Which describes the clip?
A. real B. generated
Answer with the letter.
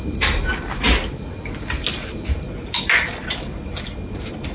A